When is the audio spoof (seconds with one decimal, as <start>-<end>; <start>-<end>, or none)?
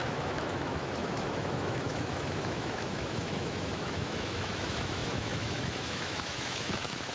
0.0-7.1